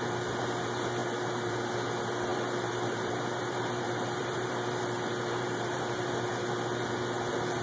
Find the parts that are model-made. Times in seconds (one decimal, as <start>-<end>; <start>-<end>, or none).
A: 1.0-1.7; 2.3-6.2